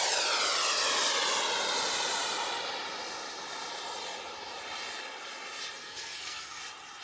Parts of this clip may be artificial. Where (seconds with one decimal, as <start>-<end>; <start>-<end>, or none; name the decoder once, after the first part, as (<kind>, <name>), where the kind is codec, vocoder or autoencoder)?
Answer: 5.8-6.6 (codec, SNAC)